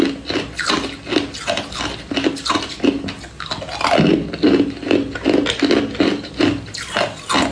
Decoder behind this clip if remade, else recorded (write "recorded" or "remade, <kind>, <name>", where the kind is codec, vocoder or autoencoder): recorded